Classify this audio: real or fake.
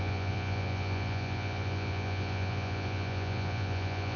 fake